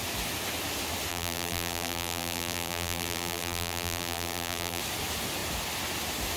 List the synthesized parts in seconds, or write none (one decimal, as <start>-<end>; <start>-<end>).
1.1-4.8